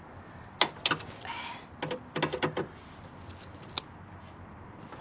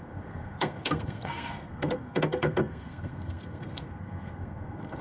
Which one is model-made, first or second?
second